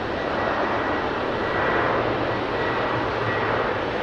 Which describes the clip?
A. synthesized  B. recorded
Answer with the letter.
B